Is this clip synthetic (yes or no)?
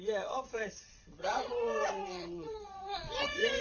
yes